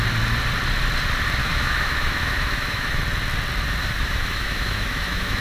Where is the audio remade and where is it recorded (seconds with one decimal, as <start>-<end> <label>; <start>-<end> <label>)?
0.0-1.4 recorded; 1.4-3.0 remade; 3.0-3.8 recorded; 3.8-5.4 remade